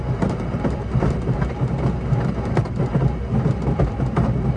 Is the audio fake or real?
real